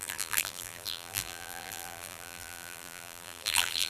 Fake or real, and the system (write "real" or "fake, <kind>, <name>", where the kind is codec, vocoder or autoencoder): fake, vocoder, BigVGAN v2